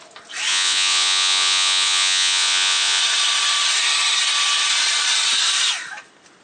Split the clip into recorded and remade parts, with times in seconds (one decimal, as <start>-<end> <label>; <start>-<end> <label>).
0.0-0.5 recorded; 0.5-3.0 remade; 3.0-6.4 recorded